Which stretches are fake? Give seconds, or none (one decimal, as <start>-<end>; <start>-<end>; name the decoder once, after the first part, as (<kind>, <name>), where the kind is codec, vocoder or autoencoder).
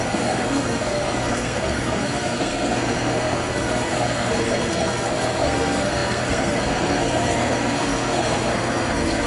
0.0-9.3 (codec, SNAC)